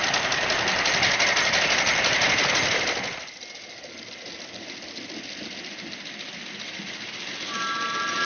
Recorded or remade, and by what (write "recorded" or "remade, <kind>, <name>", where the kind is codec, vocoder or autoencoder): recorded